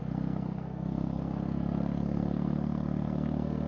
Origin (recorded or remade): remade